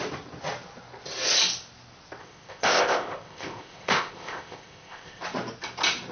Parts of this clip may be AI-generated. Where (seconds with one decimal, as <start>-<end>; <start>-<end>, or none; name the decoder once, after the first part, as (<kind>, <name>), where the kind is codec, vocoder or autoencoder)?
2.2-5.2 (codec, ZipCodec)